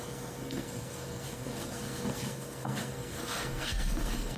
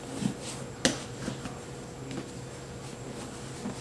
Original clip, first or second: second